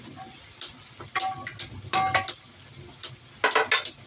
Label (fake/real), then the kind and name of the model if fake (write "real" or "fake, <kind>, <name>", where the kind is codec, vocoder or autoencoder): real